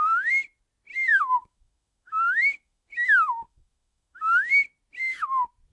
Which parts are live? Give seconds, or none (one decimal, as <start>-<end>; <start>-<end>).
0.0-1.1; 4.5-5.7